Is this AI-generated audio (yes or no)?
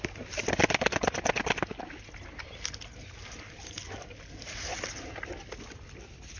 no